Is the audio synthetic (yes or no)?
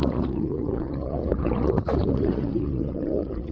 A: yes